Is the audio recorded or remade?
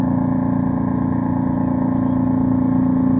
recorded